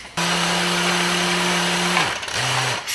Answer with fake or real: real